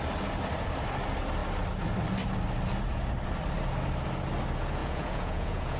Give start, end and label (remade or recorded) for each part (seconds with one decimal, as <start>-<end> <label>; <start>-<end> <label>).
0.0-4.8 recorded; 4.8-5.8 remade